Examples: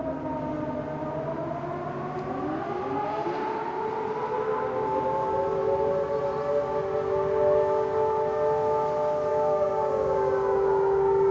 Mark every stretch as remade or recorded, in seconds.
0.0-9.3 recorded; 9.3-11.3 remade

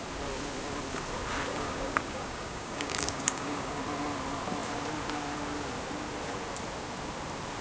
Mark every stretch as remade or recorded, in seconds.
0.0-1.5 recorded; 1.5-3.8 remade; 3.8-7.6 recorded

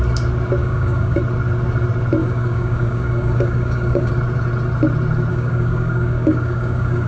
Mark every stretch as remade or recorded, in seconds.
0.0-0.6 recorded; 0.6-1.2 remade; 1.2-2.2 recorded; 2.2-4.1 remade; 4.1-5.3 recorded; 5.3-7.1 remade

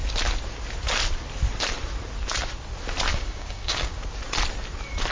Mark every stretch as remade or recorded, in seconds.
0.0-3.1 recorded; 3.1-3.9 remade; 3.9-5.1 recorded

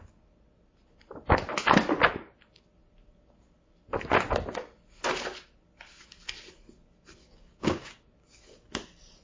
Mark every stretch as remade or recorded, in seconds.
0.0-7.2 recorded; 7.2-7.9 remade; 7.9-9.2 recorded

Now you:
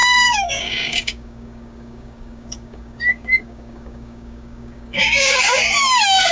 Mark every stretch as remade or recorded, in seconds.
0.0-6.3 remade